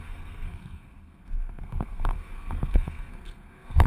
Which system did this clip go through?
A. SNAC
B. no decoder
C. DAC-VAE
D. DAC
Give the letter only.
A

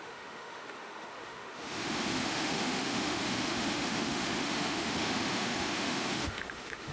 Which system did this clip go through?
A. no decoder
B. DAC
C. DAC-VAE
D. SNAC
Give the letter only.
C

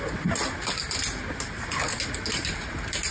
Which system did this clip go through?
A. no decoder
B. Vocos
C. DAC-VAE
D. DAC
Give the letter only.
A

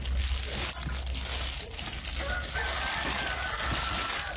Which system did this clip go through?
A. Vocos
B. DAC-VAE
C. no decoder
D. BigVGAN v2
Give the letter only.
C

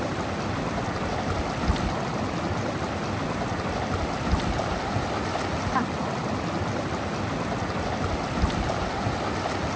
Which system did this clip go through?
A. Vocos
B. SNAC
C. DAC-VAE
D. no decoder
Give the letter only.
D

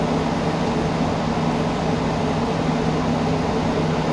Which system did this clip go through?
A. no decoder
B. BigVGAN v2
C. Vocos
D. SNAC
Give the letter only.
A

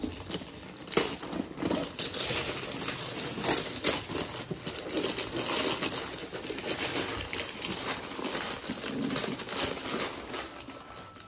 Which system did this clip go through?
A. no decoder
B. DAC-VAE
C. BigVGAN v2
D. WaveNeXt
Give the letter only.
A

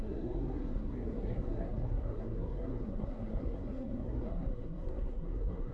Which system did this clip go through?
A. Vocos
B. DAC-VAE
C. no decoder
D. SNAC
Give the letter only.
D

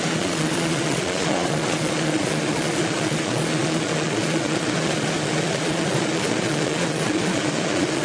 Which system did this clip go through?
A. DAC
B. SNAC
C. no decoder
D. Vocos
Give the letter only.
D